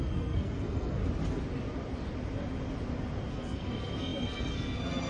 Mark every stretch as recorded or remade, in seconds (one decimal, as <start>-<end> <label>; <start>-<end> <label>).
0.0-1.0 remade; 1.0-3.3 recorded; 3.3-5.1 remade